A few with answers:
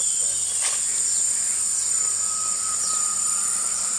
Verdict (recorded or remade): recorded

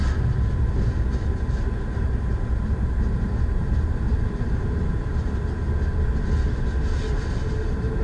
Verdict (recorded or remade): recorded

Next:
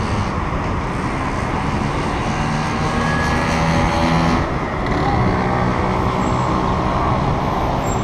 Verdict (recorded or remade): recorded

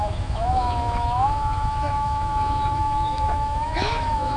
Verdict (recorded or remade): remade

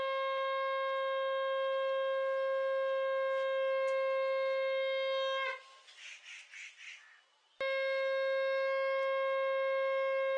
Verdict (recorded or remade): recorded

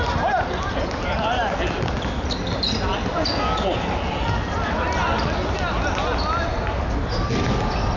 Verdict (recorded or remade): recorded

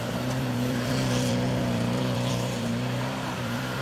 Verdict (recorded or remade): remade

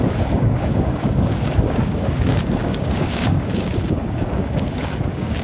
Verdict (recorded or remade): remade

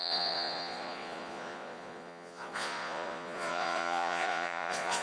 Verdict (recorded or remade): remade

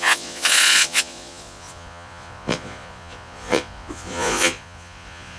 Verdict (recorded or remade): remade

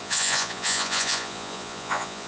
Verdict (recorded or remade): remade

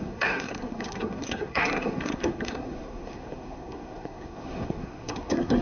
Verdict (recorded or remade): remade